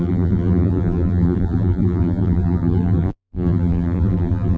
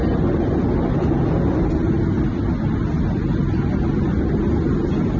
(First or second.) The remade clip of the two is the first